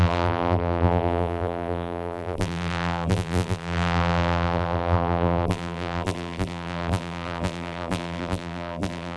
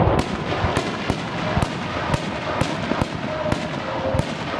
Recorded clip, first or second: second